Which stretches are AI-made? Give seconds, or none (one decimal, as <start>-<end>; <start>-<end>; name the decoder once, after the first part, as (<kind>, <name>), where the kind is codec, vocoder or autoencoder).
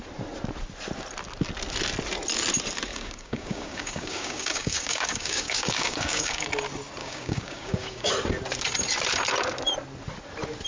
2.9-6.5 (codec, DAC); 7.0-8.1